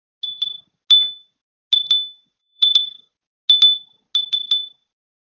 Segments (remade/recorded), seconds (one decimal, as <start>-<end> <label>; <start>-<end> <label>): 0.0-2.4 recorded; 2.4-3.1 remade; 3.1-5.2 recorded